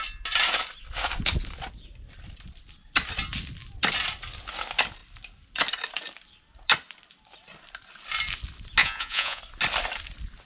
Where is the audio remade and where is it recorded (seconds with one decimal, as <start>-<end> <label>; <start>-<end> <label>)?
0.0-8.8 recorded; 8.8-9.4 remade; 9.4-10.5 recorded